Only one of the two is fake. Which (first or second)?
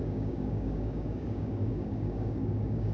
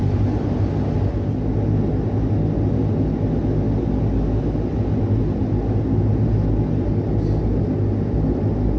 first